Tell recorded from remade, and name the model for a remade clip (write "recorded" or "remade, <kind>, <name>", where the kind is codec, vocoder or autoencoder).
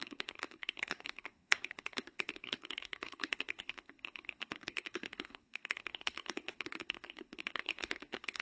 remade, codec, SNAC